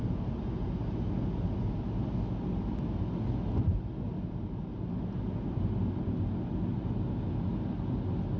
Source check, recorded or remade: recorded